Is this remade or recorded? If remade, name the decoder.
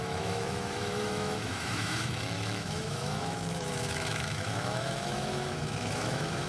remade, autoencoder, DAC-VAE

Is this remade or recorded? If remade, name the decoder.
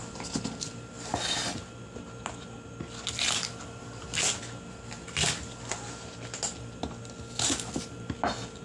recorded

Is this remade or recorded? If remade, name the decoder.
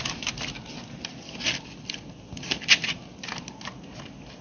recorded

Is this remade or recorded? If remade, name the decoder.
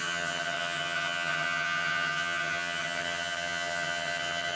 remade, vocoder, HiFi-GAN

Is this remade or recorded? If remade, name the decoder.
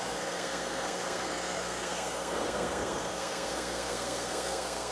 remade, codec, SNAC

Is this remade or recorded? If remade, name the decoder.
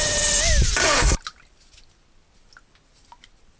recorded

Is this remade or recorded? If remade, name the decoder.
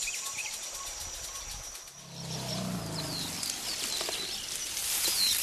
recorded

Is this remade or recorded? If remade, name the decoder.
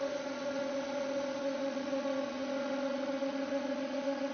remade, vocoder, Vocos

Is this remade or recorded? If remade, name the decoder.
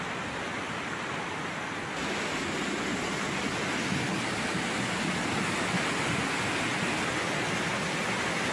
recorded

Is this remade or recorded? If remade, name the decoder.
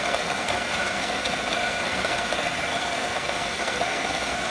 remade, codec, SNAC